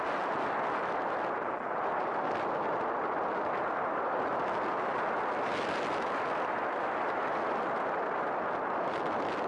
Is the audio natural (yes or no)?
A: yes